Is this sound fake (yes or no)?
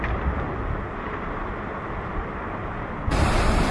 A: no